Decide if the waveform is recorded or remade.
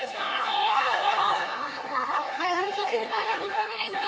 remade